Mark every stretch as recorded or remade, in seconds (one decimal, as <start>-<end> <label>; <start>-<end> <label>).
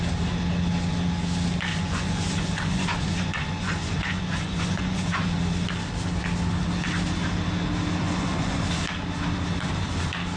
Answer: 0.0-1.7 recorded; 1.7-5.4 remade; 5.4-8.0 recorded; 8.0-8.6 remade; 8.6-10.4 recorded